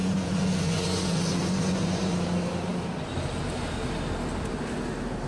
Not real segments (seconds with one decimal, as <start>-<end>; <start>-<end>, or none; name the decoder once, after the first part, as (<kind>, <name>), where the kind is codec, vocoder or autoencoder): 0.0-2.1 (vocoder, Vocos)

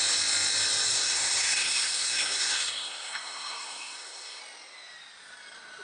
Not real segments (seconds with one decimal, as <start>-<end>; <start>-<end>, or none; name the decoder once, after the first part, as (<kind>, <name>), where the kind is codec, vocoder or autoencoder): 0.9-4.4 (codec, SNAC)

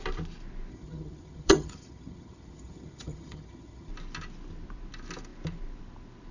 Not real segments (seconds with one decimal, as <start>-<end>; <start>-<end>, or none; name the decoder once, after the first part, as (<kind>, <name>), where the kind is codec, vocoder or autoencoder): 0.7-3.9 (vocoder, HiFi-GAN)

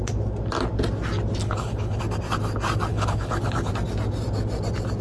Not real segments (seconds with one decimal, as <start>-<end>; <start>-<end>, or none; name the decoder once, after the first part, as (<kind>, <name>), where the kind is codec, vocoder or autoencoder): 1.4-2.0 (codec, HILCodec); 2.9-3.7

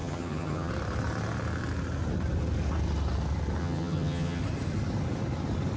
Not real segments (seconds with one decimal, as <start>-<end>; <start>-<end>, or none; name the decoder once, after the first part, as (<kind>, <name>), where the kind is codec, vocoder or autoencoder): 0.0-0.7 (vocoder, HiFi-GAN); 3.6-4.4

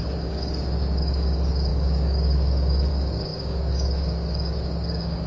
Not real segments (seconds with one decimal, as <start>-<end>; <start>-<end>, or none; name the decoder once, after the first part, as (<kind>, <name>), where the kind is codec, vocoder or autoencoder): 0.0-5.3 (codec, DAC)

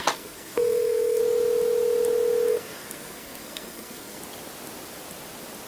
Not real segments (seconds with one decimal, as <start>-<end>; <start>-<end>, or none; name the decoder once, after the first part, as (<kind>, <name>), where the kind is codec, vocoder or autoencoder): 0.0-1.2 (codec, SNAC); 2.5-4.2

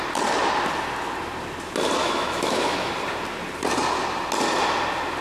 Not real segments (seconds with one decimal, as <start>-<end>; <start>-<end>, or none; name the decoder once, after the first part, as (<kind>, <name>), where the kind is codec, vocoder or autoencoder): 2.0-2.9 (autoencoder, DAC-VAE)